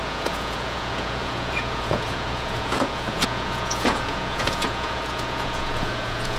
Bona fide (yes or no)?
no